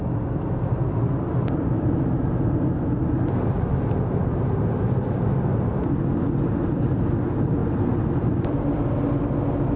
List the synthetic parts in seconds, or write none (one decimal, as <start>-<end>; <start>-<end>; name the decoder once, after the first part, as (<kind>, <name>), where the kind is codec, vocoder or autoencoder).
7.6-8.8 (vocoder, BigVGAN v2)